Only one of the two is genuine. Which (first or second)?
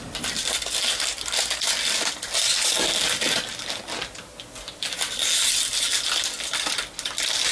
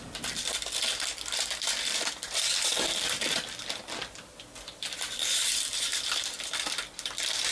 first